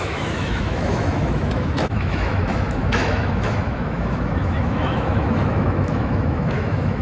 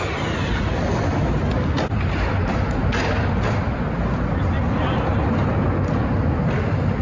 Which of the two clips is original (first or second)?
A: second